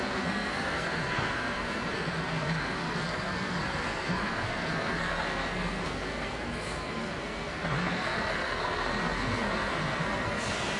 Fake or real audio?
fake